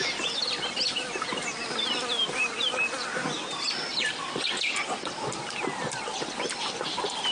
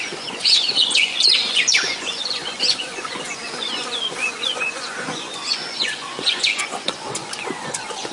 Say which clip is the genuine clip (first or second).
first